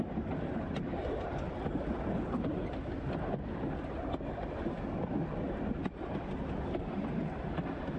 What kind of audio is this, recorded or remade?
recorded